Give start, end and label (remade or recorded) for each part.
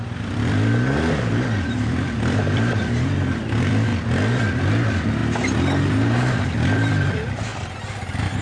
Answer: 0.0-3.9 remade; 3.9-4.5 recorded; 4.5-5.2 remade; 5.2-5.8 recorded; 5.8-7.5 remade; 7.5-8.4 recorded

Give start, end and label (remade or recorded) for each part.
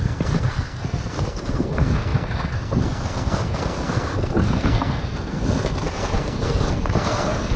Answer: 0.0-7.6 remade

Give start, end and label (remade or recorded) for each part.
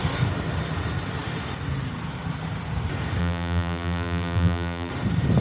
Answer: 0.0-3.2 recorded; 3.2-4.9 remade; 4.9-5.4 recorded